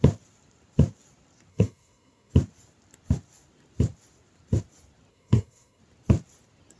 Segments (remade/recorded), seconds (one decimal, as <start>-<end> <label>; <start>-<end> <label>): 0.0-1.5 recorded; 1.5-2.3 remade; 2.3-5.1 recorded; 5.1-5.8 remade; 5.8-6.8 recorded